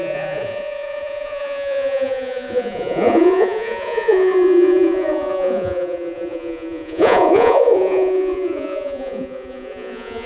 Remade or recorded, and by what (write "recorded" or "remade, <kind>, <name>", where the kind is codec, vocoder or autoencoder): remade, vocoder, Vocos